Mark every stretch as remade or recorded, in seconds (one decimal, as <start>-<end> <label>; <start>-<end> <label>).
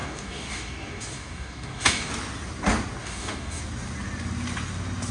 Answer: 0.0-2.1 remade; 2.1-3.0 recorded; 3.0-3.6 remade; 3.6-5.1 recorded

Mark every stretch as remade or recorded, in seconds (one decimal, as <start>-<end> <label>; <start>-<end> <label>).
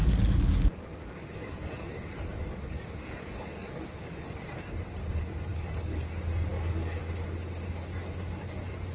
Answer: 0.0-4.3 remade; 4.3-5.5 recorded; 5.5-6.0 remade; 6.0-6.5 recorded; 6.5-7.0 remade; 7.0-8.9 recorded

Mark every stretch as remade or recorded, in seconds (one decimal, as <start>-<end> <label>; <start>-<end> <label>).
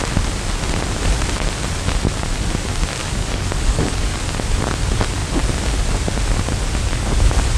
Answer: 0.0-3.0 recorded; 3.0-4.2 remade; 4.2-7.6 recorded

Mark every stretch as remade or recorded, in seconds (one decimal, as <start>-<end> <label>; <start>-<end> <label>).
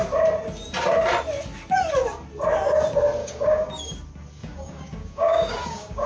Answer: 0.0-3.2 recorded; 3.2-3.7 remade; 3.7-4.4 recorded; 4.4-6.1 remade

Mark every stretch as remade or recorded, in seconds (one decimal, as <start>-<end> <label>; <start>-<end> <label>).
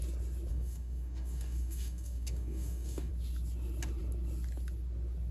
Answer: 0.0-0.5 recorded; 0.5-3.1 remade; 3.1-5.3 recorded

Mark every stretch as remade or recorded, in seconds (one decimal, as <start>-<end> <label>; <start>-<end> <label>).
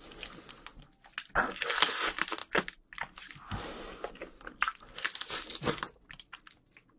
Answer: 0.0-7.0 recorded